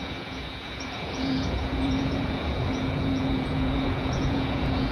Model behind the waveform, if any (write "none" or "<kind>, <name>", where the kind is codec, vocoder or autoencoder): vocoder, Vocos